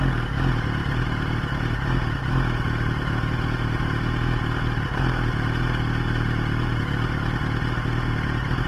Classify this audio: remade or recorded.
recorded